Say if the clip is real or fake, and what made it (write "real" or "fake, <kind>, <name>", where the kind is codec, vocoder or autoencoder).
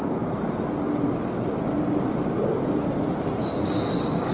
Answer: real